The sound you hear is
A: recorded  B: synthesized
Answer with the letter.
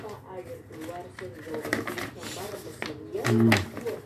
A